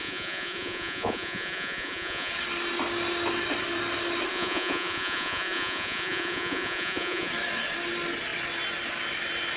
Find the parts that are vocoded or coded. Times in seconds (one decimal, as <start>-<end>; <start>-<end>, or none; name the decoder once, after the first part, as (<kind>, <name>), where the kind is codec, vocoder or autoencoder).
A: 0.0-2.3 (vocoder, Vocos); 4.3-7.3